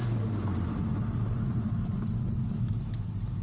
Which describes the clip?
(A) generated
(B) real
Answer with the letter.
B